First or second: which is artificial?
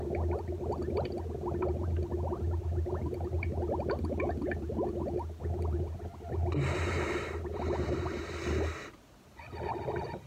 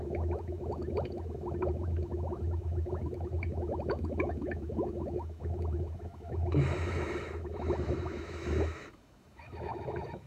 second